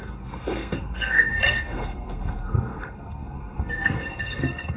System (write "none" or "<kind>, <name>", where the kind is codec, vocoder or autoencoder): codec, SNAC